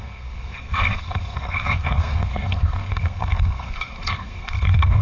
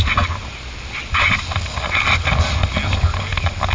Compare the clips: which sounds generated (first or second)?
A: first